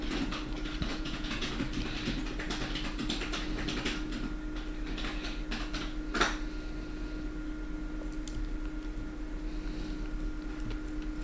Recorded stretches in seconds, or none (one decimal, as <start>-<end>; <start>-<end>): 0.0-0.9; 1.5-11.2